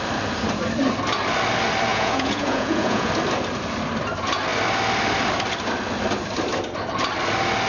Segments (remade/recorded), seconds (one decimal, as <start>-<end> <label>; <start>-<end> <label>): 0.0-1.9 recorded; 1.9-3.1 remade; 3.1-7.7 recorded